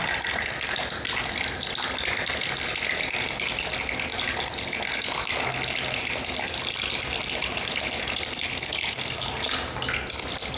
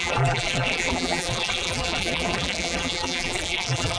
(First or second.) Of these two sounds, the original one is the first